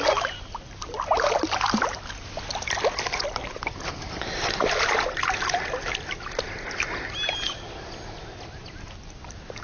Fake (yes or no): no